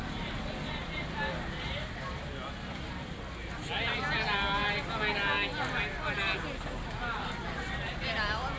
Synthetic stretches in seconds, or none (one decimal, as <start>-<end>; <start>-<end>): 0.8-1.3